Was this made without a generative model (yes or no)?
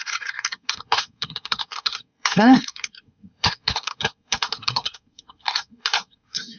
no